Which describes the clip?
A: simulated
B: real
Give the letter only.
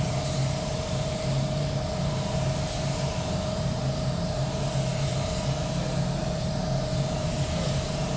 A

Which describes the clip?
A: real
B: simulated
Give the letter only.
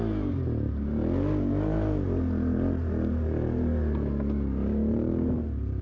A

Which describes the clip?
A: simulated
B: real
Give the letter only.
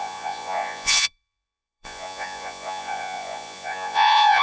A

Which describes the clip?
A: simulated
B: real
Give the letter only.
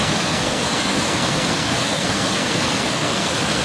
A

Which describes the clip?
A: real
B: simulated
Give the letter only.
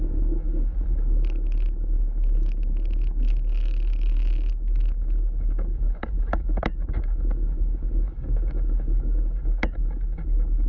B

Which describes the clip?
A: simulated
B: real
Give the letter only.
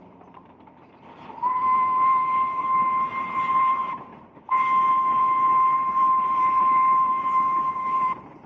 A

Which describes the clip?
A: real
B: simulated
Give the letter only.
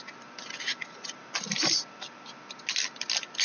A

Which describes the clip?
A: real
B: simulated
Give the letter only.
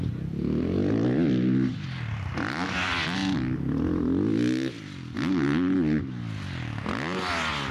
A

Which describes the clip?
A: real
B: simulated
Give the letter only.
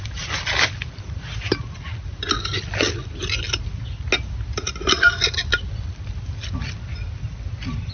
A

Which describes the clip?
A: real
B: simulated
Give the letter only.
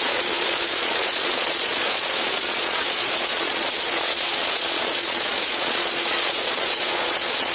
B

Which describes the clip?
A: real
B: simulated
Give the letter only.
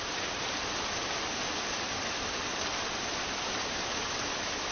A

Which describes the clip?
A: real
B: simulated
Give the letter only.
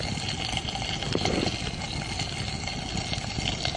A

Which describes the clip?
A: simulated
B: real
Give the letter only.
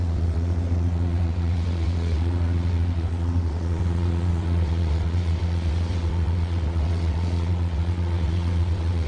A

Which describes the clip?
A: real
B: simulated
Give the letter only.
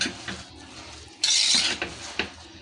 B